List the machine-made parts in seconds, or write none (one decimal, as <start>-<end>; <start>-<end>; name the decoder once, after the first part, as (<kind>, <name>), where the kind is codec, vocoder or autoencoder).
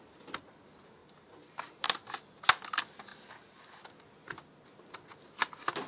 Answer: 1.0-1.8 (vocoder, BigVGAN v2); 3.1-3.8